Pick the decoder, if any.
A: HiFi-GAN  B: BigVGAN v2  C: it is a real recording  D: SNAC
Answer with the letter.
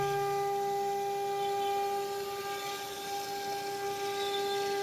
C